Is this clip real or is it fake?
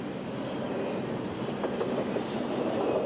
real